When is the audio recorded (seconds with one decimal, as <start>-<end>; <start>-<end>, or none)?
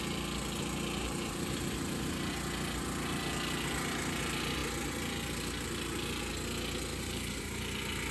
0.0-1.0; 2.3-6.9; 7.6-8.1